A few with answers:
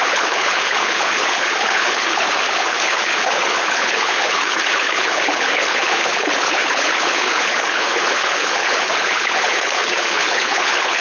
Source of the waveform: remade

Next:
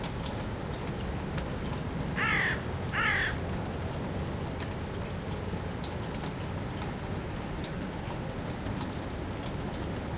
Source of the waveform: recorded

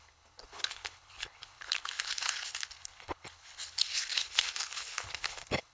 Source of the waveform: remade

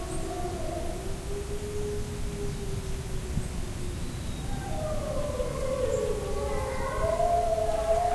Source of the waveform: recorded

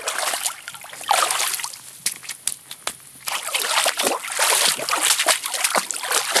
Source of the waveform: recorded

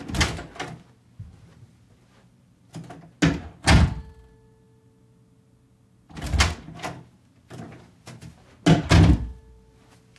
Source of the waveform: recorded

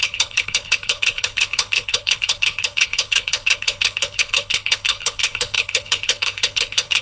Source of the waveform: remade